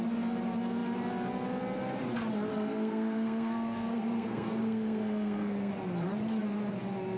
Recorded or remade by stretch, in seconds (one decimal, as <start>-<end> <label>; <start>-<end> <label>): 0.0-2.5 recorded; 2.5-5.7 remade; 5.7-7.2 recorded